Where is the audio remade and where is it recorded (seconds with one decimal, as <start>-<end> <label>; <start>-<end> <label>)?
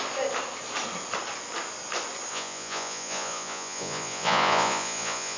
0.0-2.3 recorded; 2.3-5.4 remade